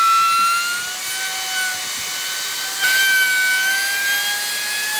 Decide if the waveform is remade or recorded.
recorded